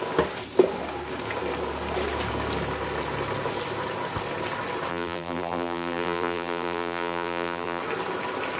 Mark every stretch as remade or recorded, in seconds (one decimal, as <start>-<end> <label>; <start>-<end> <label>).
0.0-4.9 recorded; 4.9-7.8 remade; 7.8-8.6 recorded